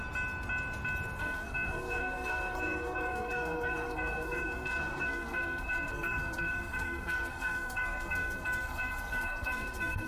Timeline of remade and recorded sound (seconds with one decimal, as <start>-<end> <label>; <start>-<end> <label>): 0.0-1.2 recorded; 1.2-10.1 remade